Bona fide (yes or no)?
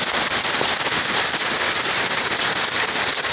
no